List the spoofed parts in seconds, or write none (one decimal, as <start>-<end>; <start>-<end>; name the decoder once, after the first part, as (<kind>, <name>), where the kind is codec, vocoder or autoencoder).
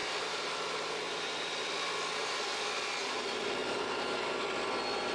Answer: 3.6-4.3 (vocoder, BigVGAN v2)